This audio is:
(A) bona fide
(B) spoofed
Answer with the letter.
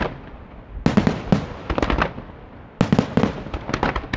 A